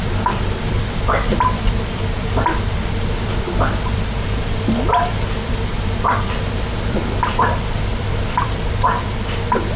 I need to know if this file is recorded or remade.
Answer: remade